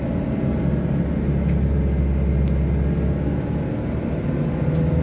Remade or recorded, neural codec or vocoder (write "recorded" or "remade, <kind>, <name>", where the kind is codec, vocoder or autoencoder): recorded